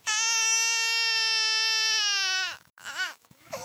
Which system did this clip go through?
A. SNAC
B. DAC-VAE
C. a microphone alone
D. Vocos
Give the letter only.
B